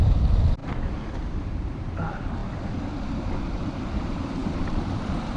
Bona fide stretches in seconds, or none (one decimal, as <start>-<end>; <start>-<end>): 0.0-0.6; 1.2-4.4